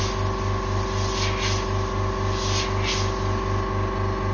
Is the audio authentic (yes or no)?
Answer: yes